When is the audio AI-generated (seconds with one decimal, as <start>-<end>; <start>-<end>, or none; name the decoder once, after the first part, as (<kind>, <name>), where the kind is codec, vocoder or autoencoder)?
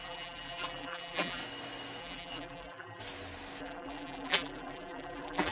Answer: 0.0-1.4 (vocoder, BigVGAN v2); 2.0-3.0; 3.6-5.5